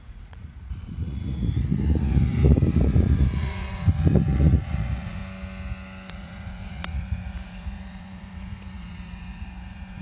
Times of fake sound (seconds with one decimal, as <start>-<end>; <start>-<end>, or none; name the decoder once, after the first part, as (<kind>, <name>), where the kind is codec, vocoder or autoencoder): 0.0-5.2 (vocoder, Vocos); 6.1-10.0